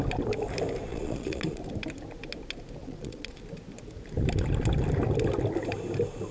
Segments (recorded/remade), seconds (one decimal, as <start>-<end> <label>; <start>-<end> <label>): 0.0-0.9 recorded; 0.9-1.6 remade; 1.6-2.8 recorded; 2.8-3.4 remade; 3.4-6.3 recorded